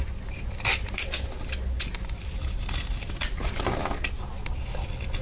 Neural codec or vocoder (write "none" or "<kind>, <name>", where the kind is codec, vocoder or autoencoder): none